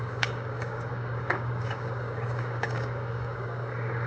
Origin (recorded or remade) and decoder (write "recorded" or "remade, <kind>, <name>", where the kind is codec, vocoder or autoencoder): remade, codec, DAC